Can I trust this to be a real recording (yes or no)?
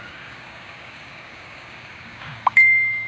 no